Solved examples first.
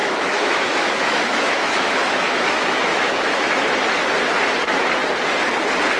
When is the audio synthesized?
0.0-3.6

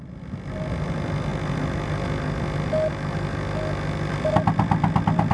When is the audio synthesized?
none

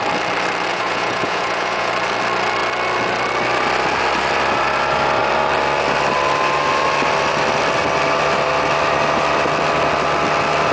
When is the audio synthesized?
0.7-1.9

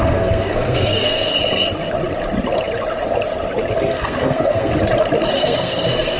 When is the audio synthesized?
0.0-1.4; 3.8-4.7; 5.3-6.2